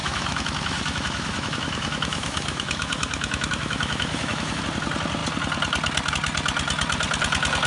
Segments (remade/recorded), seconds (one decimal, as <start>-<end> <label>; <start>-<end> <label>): 0.0-4.6 remade; 4.6-7.7 recorded